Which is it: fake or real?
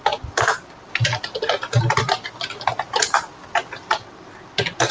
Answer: real